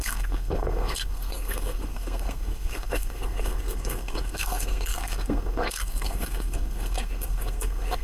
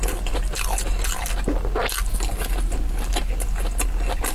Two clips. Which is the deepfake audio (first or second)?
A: first